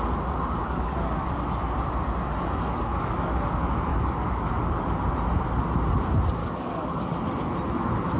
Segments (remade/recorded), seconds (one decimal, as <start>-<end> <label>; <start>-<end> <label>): 0.0-0.6 recorded; 0.6-1.3 remade; 1.3-2.3 recorded; 2.3-3.5 remade; 3.5-3.9 recorded; 3.9-4.5 remade; 4.5-6.4 recorded; 6.4-7.2 remade; 7.2-8.2 recorded